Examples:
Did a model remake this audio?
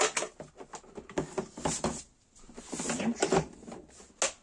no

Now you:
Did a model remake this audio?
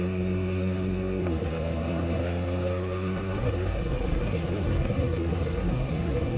yes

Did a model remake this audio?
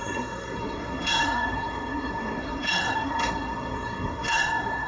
yes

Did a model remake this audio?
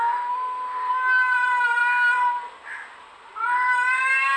no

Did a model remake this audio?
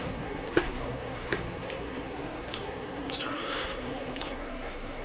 yes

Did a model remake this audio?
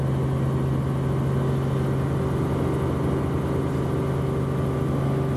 no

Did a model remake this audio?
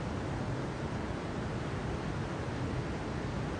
no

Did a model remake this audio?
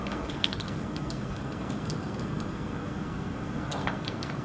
yes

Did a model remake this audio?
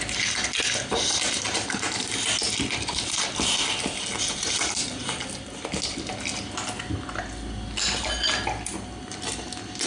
no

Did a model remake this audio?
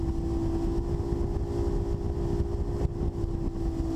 no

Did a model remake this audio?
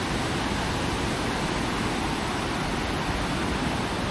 no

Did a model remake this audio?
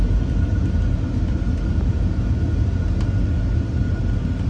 no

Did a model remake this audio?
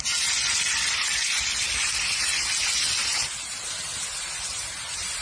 no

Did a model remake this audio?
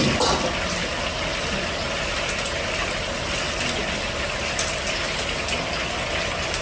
no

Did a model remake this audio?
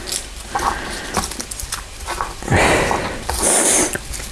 no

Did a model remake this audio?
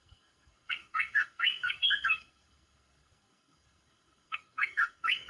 yes